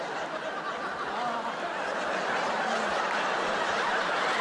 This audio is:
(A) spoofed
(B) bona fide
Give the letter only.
B